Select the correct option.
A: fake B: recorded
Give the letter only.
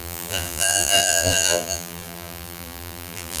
A